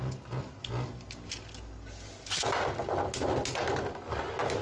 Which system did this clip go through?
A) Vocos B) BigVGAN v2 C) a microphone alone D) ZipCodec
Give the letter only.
C